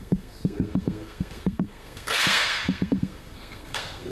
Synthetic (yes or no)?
yes